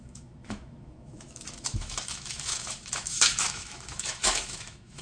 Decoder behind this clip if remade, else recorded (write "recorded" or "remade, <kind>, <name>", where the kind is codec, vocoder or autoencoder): remade, autoencoder, DAC-VAE